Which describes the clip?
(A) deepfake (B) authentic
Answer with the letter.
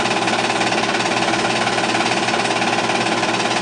B